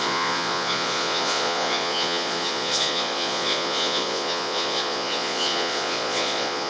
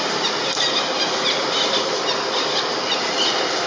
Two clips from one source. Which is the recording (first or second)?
second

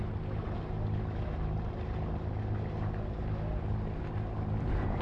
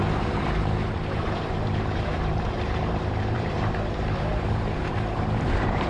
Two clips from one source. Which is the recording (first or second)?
first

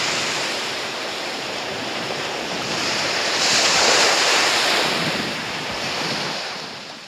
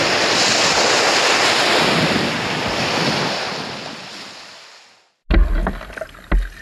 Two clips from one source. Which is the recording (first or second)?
second